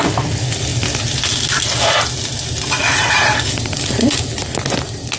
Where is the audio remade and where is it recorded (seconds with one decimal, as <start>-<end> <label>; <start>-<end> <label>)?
0.0-5.2 recorded